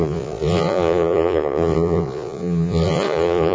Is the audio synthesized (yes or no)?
yes